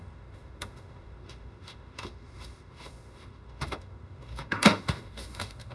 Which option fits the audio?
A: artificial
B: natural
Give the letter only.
A